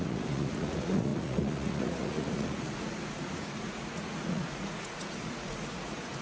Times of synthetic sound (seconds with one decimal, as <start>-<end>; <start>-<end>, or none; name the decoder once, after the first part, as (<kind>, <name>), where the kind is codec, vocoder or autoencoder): 0.0-6.2 (vocoder, Vocos)